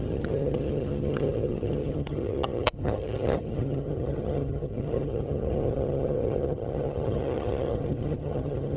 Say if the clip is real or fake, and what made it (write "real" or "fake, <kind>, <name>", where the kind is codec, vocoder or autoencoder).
fake, vocoder, HiFi-GAN